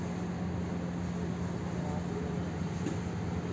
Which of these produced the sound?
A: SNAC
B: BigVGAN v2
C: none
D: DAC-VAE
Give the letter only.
C